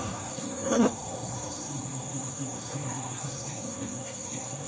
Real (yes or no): no